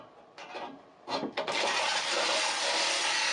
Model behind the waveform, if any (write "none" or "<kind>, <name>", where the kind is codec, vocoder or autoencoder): none